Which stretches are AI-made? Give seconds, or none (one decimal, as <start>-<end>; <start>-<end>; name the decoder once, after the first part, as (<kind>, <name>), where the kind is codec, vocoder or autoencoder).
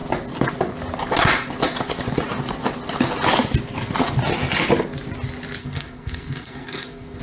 5.6-7.2 (codec, SNAC)